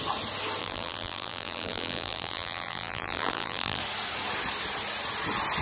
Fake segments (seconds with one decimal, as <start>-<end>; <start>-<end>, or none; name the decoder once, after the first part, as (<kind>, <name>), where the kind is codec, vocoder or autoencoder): 0.6-3.8 (vocoder, BigVGAN v2)